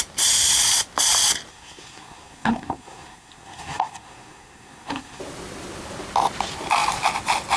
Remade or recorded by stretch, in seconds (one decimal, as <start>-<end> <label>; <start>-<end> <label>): 0.0-1.5 recorded; 1.5-5.2 remade; 5.2-7.6 recorded